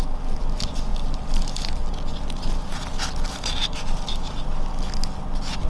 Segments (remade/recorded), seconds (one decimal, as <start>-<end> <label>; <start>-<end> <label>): 0.0-5.7 recorded